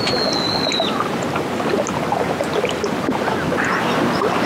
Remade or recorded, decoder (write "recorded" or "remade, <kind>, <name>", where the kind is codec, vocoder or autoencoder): recorded